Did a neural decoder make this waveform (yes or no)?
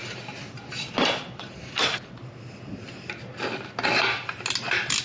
no